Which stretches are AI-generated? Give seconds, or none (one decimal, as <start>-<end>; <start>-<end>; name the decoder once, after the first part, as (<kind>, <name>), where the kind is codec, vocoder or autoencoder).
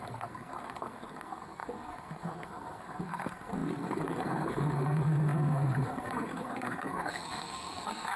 0.0-8.2 (codec, SNAC)